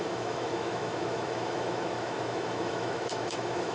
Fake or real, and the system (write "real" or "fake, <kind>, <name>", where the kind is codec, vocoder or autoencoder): fake, autoencoder, DAC-VAE